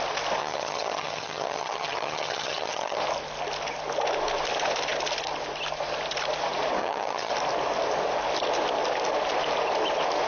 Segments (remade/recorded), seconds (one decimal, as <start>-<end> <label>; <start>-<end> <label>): 0.0-0.4 recorded; 0.4-3.0 remade; 3.0-6.8 recorded; 6.8-7.3 remade; 7.3-10.3 recorded